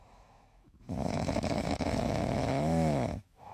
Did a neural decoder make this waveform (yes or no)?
yes